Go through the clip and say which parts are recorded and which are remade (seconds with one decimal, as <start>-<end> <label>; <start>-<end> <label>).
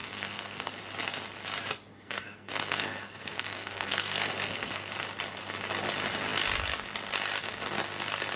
0.0-0.8 remade; 0.8-1.9 recorded; 1.9-4.9 remade; 4.9-8.4 recorded